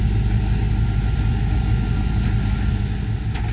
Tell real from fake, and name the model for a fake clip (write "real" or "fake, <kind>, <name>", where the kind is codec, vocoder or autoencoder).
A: real